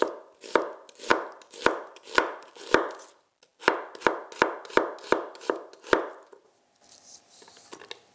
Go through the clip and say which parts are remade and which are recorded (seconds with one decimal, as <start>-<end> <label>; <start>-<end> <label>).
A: 0.0-8.1 recorded